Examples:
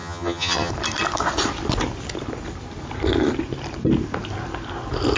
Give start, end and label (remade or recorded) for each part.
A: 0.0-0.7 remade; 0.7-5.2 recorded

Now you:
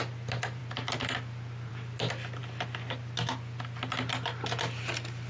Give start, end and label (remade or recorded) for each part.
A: 0.0-5.3 recorded

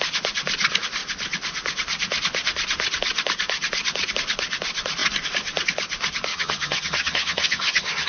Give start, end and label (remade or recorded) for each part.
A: 0.0-6.3 recorded; 6.3-8.1 remade

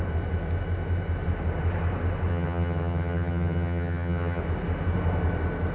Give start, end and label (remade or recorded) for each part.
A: 0.0-2.3 recorded; 2.3-4.4 remade; 4.4-5.7 recorded

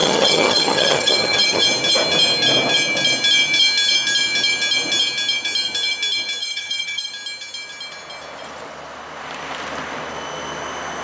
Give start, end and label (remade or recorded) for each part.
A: 0.0-1.6 remade; 1.6-6.4 recorded; 6.4-7.1 remade; 7.1-11.0 recorded

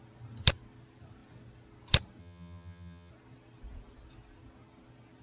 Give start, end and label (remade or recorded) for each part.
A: 0.0-2.2 recorded; 2.2-3.1 remade; 3.1-5.2 recorded

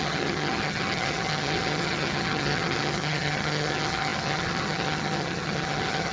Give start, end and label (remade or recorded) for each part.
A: 0.0-6.1 remade